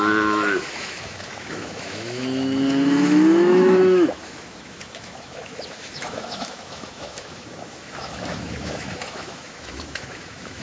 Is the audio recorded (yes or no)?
no